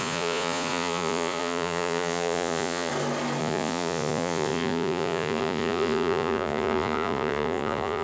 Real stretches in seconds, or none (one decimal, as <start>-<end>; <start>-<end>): 2.9-3.4